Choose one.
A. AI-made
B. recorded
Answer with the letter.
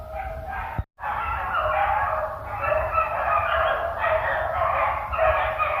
B